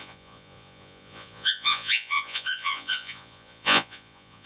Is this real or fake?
fake